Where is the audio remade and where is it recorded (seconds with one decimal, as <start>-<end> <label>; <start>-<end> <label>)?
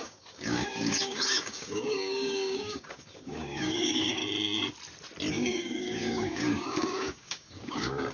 0.0-4.2 remade; 4.2-5.3 recorded; 5.3-8.1 remade